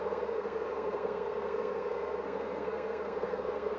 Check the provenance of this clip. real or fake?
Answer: fake